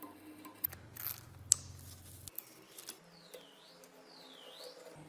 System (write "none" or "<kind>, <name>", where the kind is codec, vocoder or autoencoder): none